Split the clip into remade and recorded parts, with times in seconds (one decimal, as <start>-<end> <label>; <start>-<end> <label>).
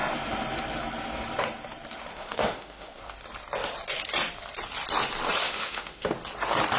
0.0-2.1 recorded; 2.1-3.0 remade; 3.0-5.4 recorded; 5.4-6.1 remade; 6.1-6.8 recorded